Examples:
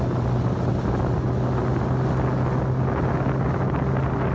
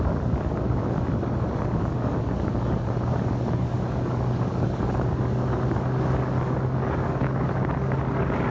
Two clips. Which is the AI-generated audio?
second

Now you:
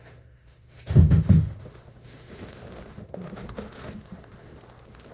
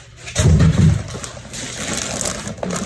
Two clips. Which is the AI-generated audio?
first